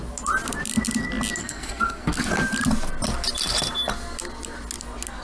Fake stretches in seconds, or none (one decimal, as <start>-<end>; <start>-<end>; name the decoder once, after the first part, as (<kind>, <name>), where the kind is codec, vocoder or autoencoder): 1.4-2.3 (codec, SNAC)